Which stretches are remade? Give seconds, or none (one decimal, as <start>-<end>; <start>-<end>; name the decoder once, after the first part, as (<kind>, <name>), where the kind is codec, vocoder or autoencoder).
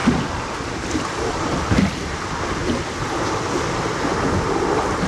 none